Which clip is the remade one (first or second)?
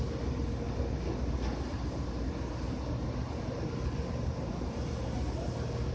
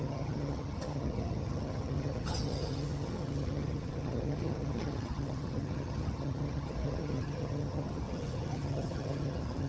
second